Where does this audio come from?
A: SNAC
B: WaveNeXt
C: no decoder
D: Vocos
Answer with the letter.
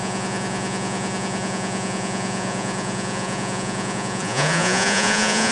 D